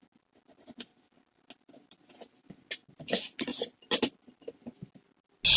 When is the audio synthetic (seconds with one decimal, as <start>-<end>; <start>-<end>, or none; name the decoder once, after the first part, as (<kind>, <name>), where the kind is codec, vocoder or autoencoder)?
none

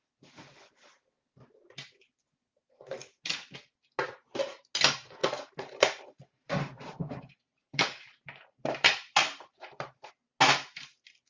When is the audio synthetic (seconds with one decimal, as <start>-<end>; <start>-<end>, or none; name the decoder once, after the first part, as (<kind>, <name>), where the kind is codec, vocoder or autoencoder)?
5.2-10.1 (vocoder, BigVGAN v2)

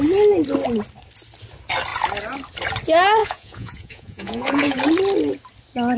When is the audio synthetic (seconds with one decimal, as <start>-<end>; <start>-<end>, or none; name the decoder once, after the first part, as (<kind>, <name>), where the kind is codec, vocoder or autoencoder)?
3.2-4.8 (vocoder, Vocos)